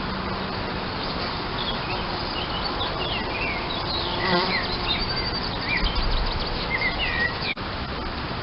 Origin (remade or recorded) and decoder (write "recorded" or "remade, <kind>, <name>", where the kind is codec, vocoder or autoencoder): recorded